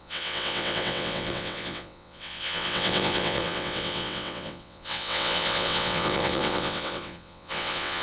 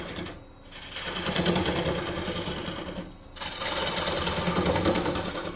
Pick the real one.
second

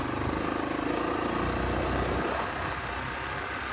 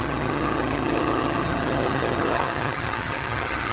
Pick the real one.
first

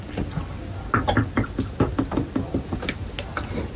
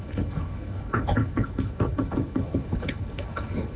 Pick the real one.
first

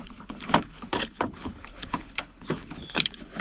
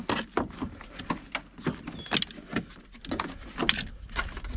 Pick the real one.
second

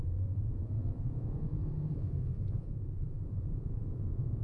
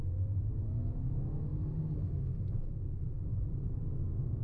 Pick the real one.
second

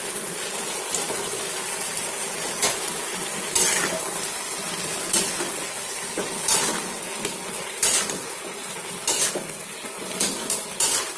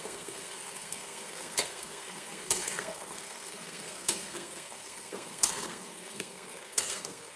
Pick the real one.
first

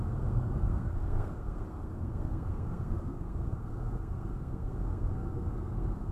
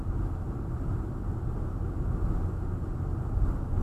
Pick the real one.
second